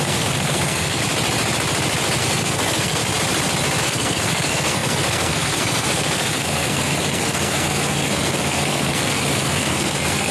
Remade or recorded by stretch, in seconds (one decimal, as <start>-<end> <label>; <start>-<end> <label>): 0.0-1.0 remade; 1.0-2.2 recorded; 2.2-3.0 remade; 3.0-3.8 recorded; 3.8-10.3 remade